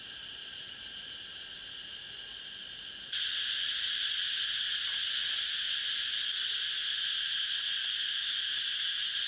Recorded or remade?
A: recorded